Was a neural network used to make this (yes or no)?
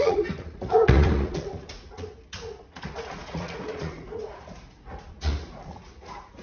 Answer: yes